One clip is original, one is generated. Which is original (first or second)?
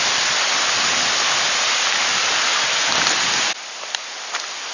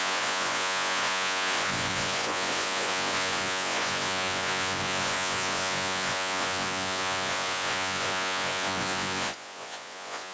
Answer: first